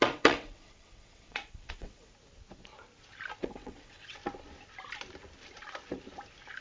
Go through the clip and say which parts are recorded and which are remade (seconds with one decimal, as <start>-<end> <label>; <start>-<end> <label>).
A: 0.0-2.1 remade; 2.1-3.4 recorded; 3.4-4.2 remade; 4.2-6.6 recorded